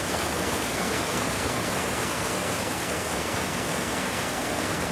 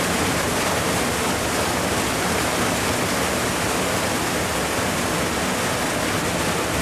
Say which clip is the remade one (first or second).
first